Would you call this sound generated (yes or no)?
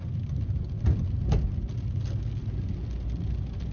no